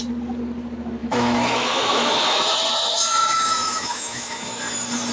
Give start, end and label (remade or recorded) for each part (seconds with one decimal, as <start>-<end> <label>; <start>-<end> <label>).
0.0-1.0 recorded; 1.0-2.4 remade; 2.4-3.2 recorded; 3.2-4.6 remade; 4.6-5.1 recorded